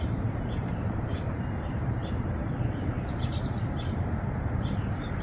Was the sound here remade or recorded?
remade